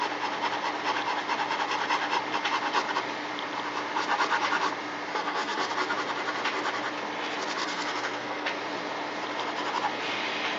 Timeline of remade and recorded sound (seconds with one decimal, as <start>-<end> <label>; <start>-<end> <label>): 0.0-5.1 recorded; 5.1-5.7 remade; 5.7-7.6 recorded; 7.6-8.5 remade; 8.5-10.6 recorded